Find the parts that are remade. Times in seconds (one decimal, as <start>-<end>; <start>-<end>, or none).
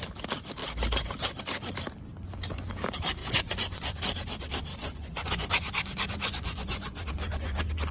3.2-4.0; 4.7-7.9